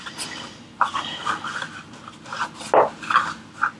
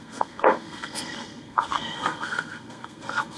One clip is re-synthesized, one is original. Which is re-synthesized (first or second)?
second